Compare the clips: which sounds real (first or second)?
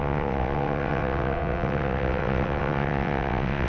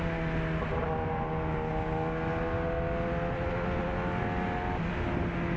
second